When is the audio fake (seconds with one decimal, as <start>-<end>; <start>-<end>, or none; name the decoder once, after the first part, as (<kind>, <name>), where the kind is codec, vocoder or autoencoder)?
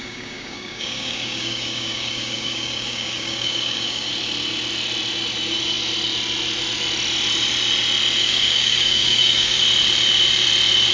0.0-4.1 (codec, DAC); 8.2-9.6